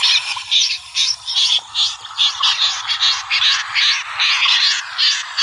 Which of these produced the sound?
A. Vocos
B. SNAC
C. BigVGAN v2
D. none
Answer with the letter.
D